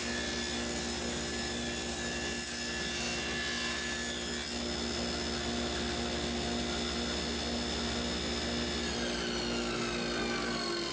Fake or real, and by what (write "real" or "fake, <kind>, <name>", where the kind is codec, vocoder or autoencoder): real